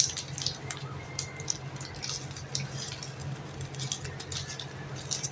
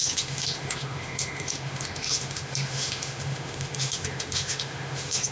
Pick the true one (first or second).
first